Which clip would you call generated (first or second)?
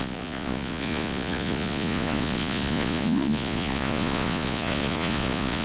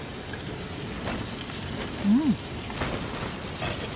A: first